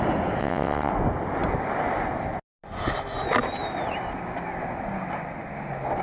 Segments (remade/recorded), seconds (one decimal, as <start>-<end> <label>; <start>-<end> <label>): 0.0-0.4 recorded; 0.4-0.9 remade; 0.9-6.0 recorded